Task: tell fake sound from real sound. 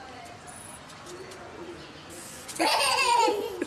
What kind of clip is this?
fake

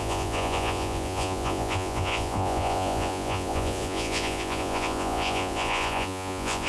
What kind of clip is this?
fake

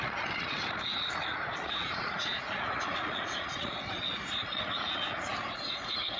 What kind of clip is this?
fake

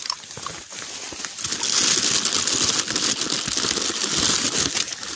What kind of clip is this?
real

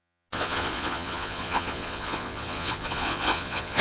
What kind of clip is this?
fake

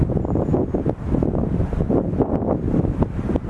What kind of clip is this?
real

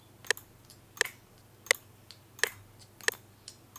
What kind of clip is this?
real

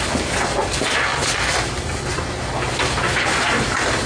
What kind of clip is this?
real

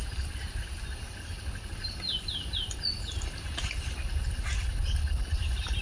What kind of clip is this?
real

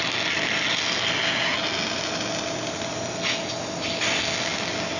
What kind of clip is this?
real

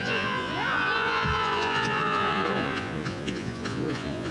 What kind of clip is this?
fake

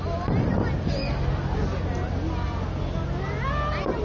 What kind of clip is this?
real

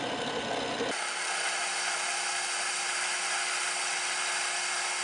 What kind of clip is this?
real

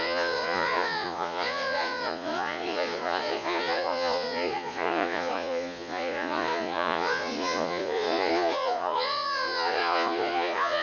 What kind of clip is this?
fake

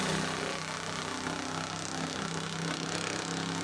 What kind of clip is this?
real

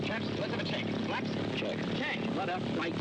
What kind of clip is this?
real